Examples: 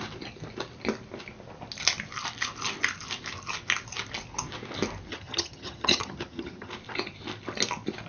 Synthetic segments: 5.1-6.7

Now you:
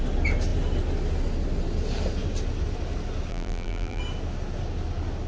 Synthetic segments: 3.3-4.0

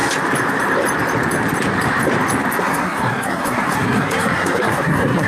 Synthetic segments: 2.6-5.3

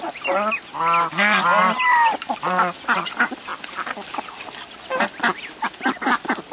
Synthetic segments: none

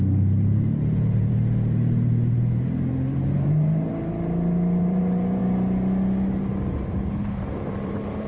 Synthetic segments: 0.0-3.9; 4.8-5.4; 7.1-8.3